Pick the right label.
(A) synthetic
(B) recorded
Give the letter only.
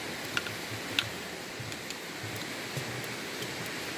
B